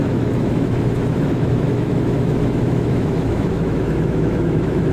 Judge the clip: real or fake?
fake